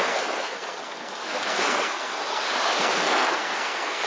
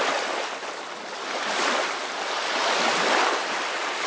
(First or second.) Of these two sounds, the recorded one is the second